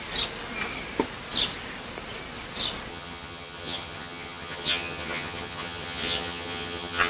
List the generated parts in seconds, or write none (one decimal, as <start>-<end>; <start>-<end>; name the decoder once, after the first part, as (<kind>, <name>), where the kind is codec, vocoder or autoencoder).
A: 2.9-7.1 (vocoder, HiFi-GAN)